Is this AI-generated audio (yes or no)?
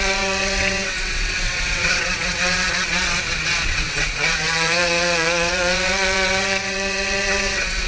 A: yes